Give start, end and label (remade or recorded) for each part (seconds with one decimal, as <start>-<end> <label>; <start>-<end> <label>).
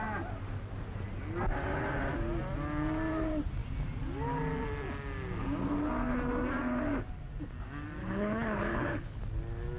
0.0-8.0 recorded; 8.0-9.2 remade; 9.2-9.8 recorded